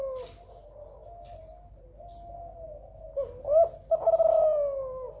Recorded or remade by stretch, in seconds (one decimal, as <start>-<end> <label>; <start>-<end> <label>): 0.0-5.2 recorded